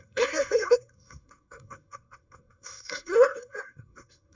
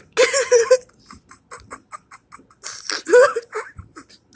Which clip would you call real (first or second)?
second